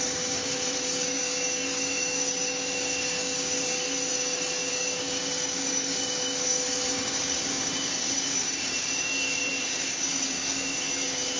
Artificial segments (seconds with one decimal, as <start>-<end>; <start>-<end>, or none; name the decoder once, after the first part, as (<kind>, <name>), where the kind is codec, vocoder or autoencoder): 0.0-11.4 (codec, DAC)